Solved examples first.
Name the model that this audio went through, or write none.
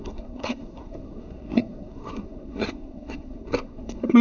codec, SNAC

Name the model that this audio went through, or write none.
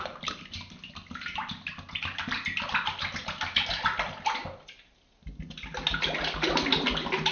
none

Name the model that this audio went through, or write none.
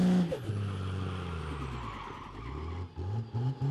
none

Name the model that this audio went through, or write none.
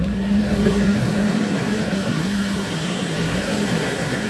codec, SNAC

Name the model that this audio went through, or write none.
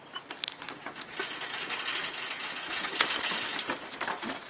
none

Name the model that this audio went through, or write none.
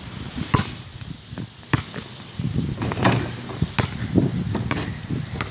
none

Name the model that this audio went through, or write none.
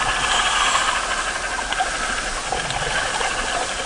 none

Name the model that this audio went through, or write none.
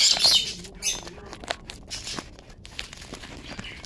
none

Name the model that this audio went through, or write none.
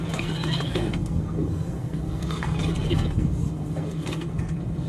codec, SNAC